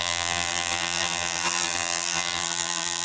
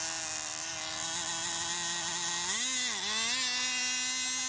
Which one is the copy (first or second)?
first